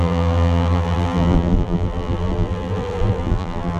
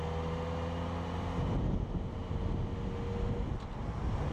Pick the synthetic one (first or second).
first